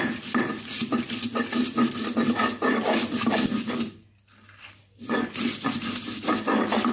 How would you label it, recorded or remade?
recorded